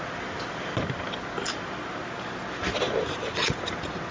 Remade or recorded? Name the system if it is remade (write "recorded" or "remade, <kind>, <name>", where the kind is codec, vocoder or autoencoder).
recorded